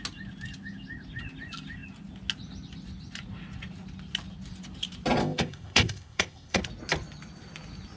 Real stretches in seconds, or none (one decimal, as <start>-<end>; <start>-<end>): 0.0-5.2; 6.6-8.0